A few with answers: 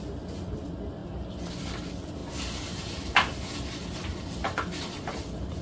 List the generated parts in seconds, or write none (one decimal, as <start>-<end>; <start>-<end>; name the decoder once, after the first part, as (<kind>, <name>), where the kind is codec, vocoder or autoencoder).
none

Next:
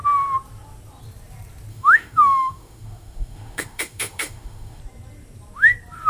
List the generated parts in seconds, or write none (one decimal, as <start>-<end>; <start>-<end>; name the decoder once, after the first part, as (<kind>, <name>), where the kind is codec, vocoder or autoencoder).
1.7-4.8 (autoencoder, DAC-VAE)

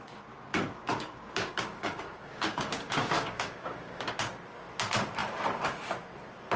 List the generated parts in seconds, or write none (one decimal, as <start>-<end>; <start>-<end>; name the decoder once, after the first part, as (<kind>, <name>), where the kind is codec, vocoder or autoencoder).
0.5-4.1 (codec, DAC)

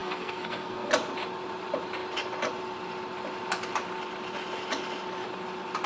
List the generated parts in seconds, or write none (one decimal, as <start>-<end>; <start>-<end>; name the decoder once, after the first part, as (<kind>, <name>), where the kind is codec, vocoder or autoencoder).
0.0-0.9 (codec, SNAC)